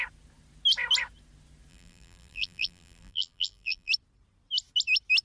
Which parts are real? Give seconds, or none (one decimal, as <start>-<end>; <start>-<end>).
0.0-1.7; 3.9-5.2